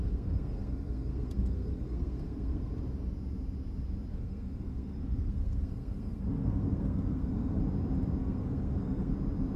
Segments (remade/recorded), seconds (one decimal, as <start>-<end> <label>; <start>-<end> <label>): 0.0-2.7 remade; 2.7-4.1 recorded; 4.1-7.6 remade; 7.6-8.2 recorded; 8.2-9.1 remade; 9.1-9.6 recorded